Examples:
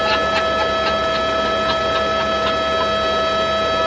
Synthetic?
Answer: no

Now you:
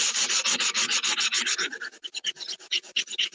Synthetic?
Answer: no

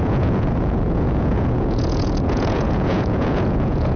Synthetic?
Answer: yes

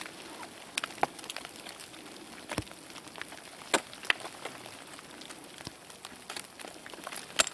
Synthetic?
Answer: no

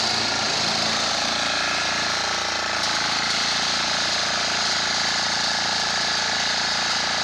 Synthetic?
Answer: no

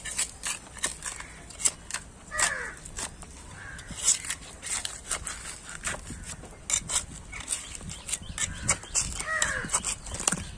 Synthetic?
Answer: no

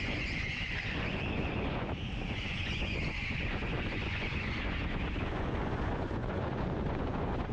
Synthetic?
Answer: yes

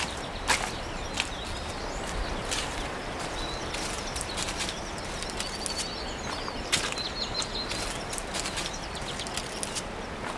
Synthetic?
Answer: no